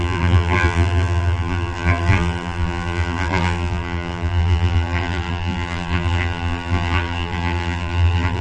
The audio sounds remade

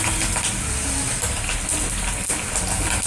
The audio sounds recorded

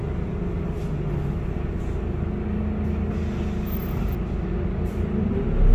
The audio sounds recorded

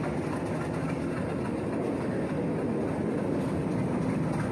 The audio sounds recorded